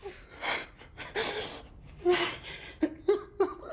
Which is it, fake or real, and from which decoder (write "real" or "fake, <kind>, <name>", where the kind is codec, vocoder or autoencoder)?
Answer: real